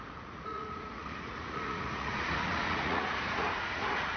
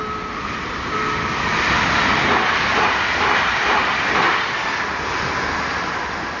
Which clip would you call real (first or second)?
second